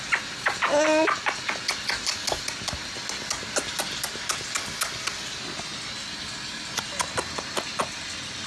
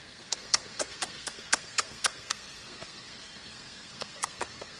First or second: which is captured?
first